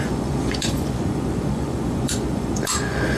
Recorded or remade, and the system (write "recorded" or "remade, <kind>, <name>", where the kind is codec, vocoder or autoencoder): remade, vocoder, Vocos